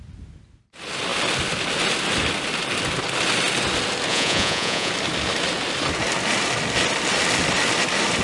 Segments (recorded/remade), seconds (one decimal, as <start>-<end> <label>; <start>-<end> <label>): 0.0-4.1 recorded; 4.1-4.9 remade; 4.9-8.2 recorded